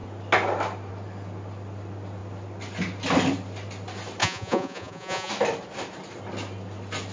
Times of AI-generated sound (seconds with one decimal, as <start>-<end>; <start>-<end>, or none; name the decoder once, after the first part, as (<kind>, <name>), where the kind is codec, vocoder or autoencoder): 4.2-5.3 (vocoder, Vocos)